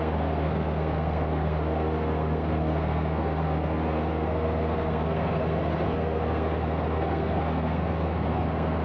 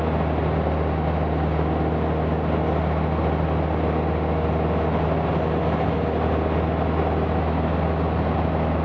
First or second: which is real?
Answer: second